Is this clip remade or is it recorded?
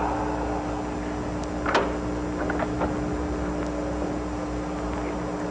recorded